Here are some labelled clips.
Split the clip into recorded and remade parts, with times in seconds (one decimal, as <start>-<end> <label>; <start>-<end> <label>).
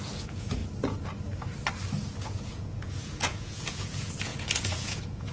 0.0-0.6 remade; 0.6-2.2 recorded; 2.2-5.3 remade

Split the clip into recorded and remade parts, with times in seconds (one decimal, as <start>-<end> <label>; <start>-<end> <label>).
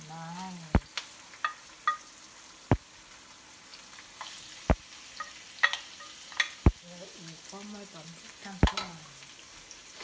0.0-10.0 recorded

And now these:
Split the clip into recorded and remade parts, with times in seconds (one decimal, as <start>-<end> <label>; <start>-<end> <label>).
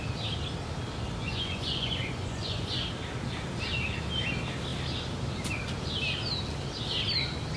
0.0-1.2 recorded; 1.2-2.8 remade; 2.8-7.6 recorded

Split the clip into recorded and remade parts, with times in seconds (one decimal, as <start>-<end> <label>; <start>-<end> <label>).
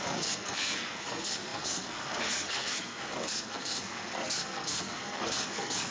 0.0-5.9 remade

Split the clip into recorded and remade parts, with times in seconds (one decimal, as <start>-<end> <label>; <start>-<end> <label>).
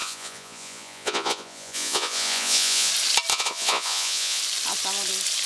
0.0-2.9 remade; 2.9-3.3 recorded; 3.3-4.4 remade; 4.4-5.5 recorded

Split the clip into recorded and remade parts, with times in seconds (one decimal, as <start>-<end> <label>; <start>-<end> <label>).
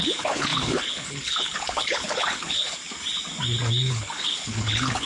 0.0-2.8 remade; 2.8-3.7 recorded; 3.7-5.1 remade